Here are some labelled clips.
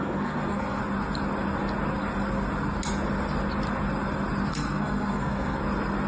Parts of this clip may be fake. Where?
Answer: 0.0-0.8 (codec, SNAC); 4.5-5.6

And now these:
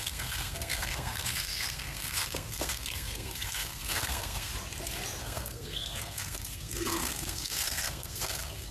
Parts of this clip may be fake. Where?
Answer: 0.0-4.5 (codec, SNAC); 5.2-8.7